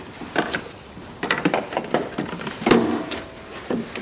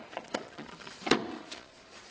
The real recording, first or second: first